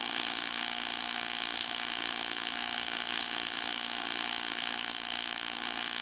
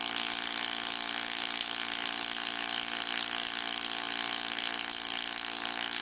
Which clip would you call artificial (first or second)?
first